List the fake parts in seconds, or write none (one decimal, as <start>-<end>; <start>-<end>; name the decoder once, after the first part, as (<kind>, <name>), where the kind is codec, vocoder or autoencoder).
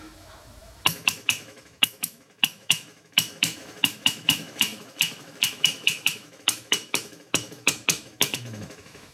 0.0-9.1 (autoencoder, DAC-VAE)